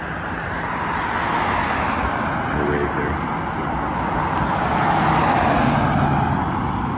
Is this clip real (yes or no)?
yes